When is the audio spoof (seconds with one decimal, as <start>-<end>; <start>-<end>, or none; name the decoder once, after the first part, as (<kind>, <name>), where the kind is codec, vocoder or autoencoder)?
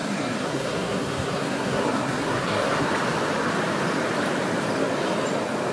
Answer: 0.0-2.9 (codec, SNAC)